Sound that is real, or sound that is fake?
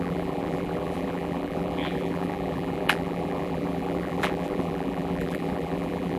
fake